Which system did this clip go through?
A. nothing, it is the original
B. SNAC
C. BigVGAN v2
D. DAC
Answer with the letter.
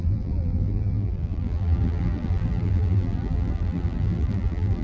C